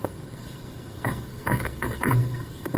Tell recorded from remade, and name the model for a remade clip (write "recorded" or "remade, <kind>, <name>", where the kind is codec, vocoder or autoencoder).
remade, codec, SNAC